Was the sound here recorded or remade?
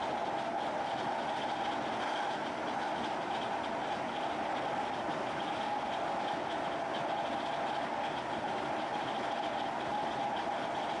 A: recorded